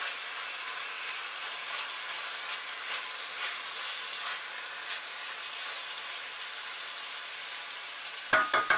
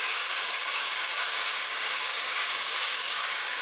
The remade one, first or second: second